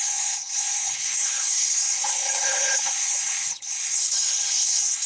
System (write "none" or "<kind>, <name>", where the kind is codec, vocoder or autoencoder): codec, HILCodec